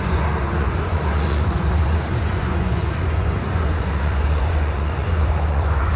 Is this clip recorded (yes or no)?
no